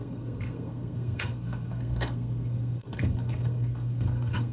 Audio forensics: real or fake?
fake